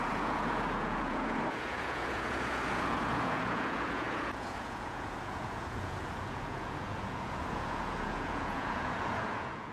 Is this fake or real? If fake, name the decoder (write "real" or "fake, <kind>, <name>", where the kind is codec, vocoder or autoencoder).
fake, vocoder, Vocos